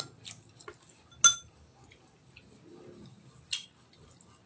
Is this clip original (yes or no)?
yes